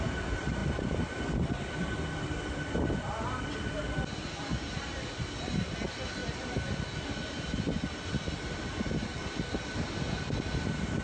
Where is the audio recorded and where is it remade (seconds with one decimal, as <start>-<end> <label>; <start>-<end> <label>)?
0.0-6.2 recorded; 6.2-6.7 remade; 6.7-11.0 recorded